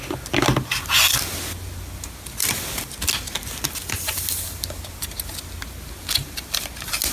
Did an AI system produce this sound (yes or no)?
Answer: no